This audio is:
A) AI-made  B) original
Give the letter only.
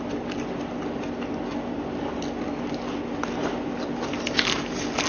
B